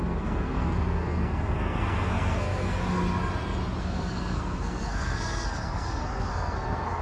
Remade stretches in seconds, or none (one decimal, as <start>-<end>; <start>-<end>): 0.0-2.8; 3.8-7.0